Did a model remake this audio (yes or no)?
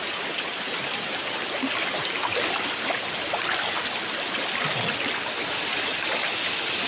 no